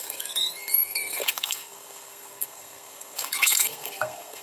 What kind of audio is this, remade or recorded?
remade